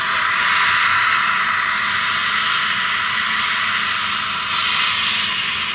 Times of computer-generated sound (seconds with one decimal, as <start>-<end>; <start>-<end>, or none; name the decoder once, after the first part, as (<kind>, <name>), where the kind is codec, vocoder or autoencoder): none